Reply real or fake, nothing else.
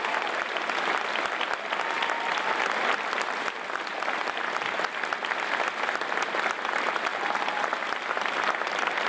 real